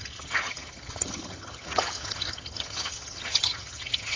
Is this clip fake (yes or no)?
yes